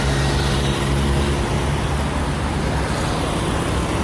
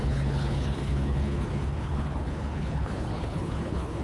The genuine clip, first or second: first